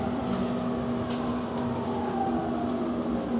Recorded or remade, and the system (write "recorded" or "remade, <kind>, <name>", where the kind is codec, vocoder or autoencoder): recorded